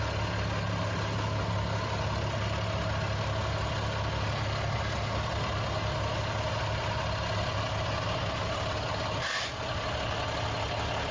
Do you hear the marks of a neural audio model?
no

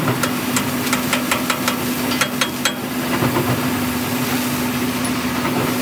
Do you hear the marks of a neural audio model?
no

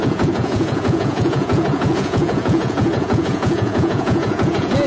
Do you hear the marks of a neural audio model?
yes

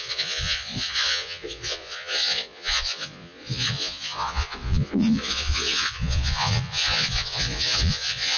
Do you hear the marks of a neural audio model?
yes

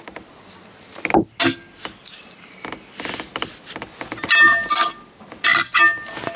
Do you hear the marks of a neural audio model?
no